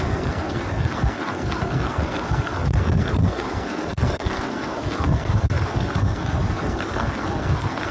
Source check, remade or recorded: remade